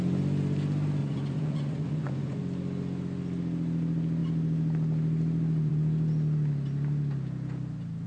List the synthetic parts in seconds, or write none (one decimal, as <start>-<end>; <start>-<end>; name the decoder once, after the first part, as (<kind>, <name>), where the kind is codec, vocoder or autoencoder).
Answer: 1.0-2.4 (vocoder, Vocos)